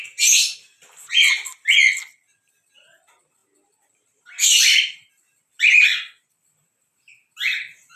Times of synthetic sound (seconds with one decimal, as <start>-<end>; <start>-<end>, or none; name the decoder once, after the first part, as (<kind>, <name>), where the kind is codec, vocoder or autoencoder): 0.0-1.5 (vocoder, BigVGAN v2); 2.5-8.0